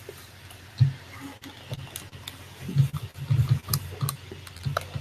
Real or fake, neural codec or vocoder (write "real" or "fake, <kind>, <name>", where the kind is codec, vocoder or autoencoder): real